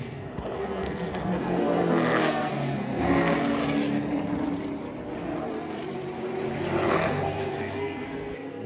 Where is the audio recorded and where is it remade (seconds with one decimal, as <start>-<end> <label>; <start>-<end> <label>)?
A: 0.0-3.6 remade; 3.6-6.9 recorded; 6.9-8.7 remade